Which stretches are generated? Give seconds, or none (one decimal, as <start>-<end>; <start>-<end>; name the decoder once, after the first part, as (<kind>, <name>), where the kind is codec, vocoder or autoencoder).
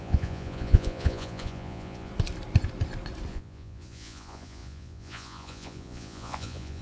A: 0.0-2.1 (vocoder, Vocos); 3.3-6.8